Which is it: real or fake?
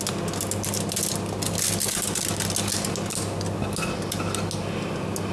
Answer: real